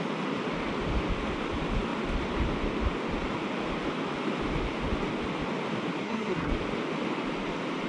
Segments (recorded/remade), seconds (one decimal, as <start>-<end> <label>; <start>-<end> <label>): 0.0-6.0 recorded; 6.0-6.5 remade; 6.5-7.9 recorded